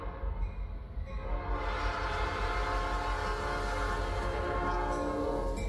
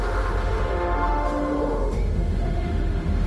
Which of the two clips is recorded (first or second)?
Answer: first